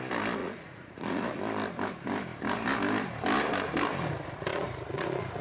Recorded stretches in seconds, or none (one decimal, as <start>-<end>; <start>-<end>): 0.0-0.4; 1.4-4.5